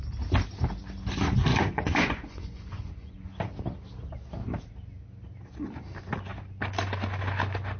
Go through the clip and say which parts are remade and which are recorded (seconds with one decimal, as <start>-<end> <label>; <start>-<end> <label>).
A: 0.0-1.5 recorded; 1.5-3.3 remade; 3.3-7.8 recorded